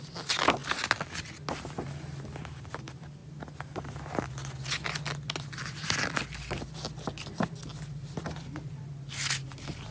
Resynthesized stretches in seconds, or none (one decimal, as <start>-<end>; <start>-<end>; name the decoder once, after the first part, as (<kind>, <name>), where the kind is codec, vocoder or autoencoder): 3.2-4.3 (vocoder, BigVGAN v2)